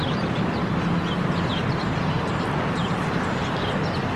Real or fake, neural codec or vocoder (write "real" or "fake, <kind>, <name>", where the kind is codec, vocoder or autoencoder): real